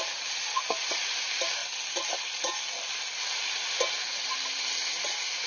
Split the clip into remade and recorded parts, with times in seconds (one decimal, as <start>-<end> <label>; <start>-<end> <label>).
0.0-5.5 recorded